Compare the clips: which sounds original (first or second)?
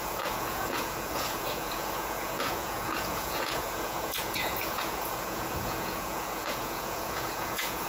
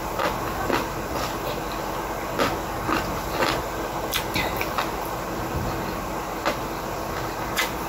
second